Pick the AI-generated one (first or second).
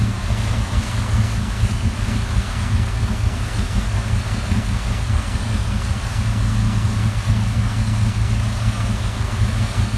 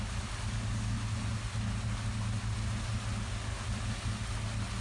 first